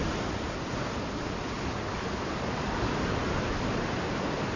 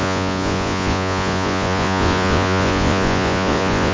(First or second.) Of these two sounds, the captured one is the first